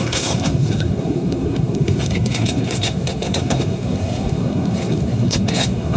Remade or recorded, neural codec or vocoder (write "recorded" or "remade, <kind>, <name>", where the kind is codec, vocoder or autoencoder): remade, codec, SNAC